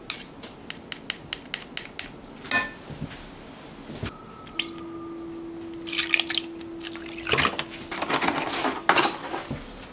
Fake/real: real